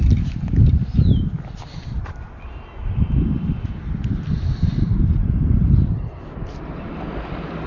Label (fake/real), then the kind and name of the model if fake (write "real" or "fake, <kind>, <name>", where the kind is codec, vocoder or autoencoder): fake, vocoder, BigVGAN v2